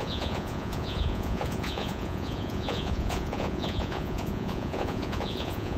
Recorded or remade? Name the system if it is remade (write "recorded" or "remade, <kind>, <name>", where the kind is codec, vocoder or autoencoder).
remade, vocoder, Vocos